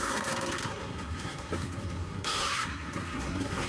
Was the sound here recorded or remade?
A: remade